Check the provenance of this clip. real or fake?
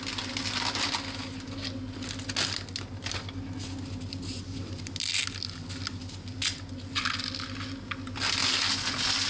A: real